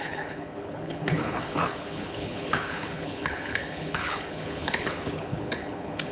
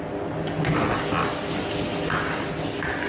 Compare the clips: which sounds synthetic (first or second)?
first